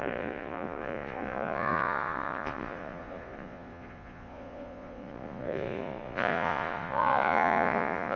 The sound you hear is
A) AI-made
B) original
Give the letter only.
A